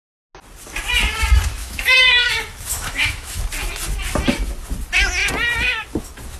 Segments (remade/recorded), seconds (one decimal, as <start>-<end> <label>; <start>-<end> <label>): 0.0-1.6 recorded; 1.6-2.3 remade; 2.3-2.7 recorded; 2.7-3.4 remade; 3.4-6.4 recorded